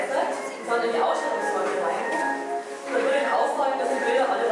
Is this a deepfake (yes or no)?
no